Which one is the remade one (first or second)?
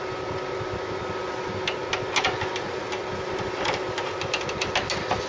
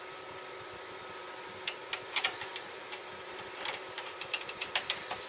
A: second